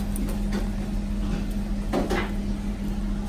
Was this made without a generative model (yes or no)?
yes